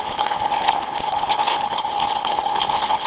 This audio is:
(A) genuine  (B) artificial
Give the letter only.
B